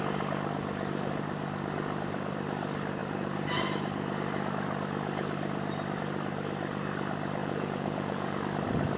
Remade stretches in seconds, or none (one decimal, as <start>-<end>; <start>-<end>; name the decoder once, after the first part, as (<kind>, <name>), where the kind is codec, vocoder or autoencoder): 7.4-8.4 (vocoder, Vocos)